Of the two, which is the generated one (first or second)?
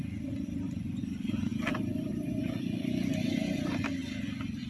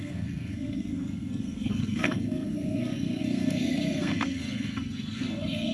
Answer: second